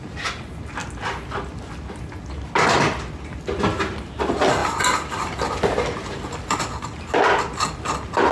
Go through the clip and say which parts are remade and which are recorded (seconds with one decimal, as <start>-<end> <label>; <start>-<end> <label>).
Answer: 0.0-8.3 recorded